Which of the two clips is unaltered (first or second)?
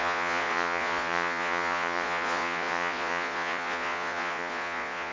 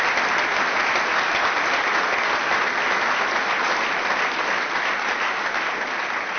second